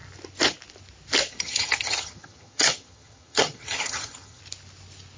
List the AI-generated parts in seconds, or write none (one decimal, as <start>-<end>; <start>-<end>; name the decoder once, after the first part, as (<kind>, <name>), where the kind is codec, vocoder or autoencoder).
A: 1.3-4.4 (vocoder, HiFi-GAN)